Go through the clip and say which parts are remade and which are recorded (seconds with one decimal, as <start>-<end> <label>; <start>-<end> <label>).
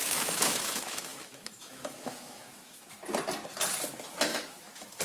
0.0-3.0 remade; 3.0-4.3 recorded; 4.3-5.0 remade